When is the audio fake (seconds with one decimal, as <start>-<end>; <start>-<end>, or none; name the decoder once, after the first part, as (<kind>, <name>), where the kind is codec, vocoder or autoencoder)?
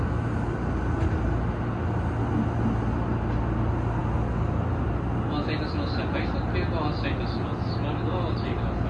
none